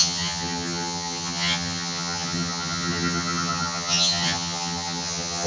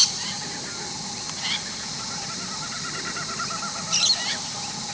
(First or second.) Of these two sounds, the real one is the second